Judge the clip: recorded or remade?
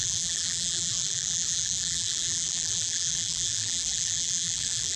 remade